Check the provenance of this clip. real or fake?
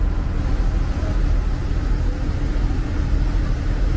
real